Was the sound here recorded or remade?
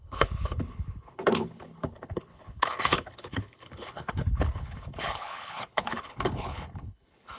remade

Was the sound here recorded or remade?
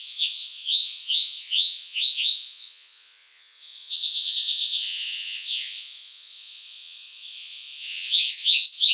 remade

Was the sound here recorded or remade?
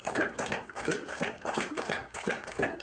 remade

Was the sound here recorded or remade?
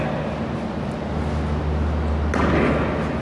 recorded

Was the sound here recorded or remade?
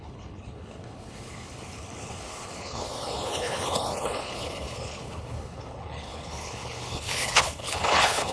remade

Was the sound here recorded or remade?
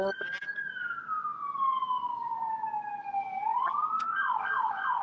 recorded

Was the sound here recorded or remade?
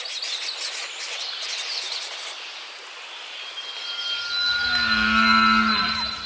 recorded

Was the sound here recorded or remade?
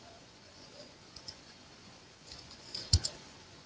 remade